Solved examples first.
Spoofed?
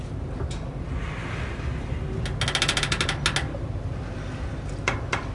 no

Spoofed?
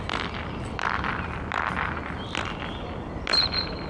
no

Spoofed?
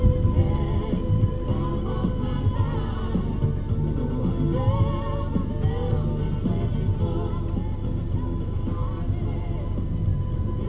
no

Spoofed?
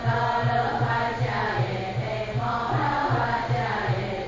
no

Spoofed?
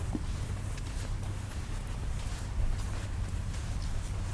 no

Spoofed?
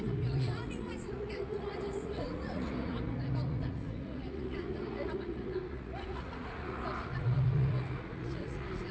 yes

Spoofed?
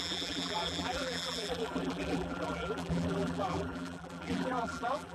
yes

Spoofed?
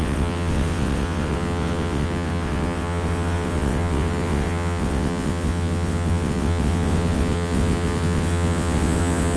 yes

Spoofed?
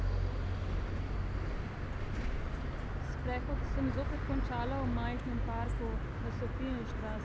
no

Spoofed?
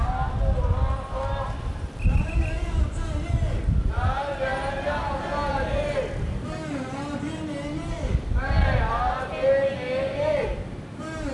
no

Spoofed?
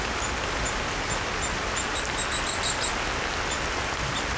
no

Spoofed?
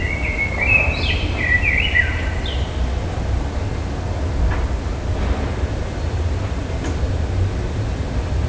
no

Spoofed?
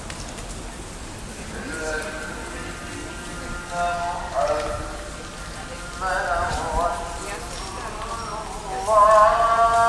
no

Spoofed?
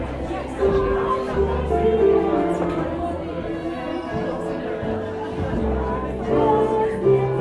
no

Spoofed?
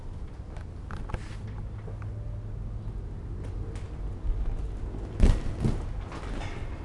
no